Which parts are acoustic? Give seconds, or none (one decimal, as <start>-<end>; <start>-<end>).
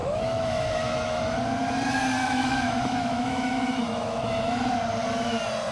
1.2-2.2; 4.2-5.7